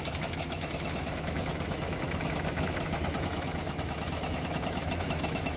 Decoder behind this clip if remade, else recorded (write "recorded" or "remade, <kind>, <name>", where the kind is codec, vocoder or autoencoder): remade, autoencoder, DAC-VAE